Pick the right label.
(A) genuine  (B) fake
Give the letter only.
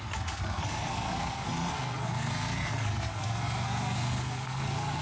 B